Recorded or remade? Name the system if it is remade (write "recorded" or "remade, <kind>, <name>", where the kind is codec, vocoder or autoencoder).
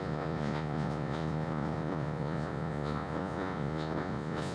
remade, vocoder, Vocos